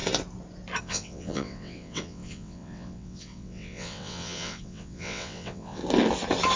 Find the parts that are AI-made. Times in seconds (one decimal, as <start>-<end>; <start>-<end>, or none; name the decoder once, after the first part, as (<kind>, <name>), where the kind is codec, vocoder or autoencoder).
0.8-5.8 (vocoder, WaveNeXt)